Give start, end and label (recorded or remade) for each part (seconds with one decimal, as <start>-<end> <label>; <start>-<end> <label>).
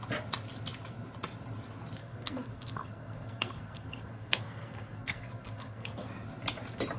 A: 0.0-2.0 recorded; 2.0-6.1 remade; 6.1-7.0 recorded